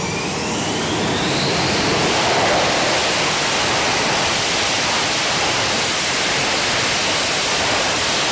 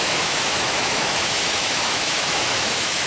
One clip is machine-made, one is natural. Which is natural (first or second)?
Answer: first